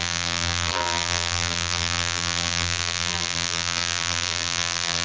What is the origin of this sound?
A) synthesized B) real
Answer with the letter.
A